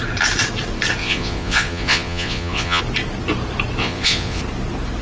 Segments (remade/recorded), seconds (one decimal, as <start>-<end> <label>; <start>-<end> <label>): 0.0-1.0 recorded; 1.0-2.8 remade; 2.8-3.8 recorded; 3.8-4.4 remade; 4.4-5.0 recorded